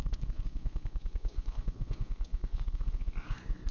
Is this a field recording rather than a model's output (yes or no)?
no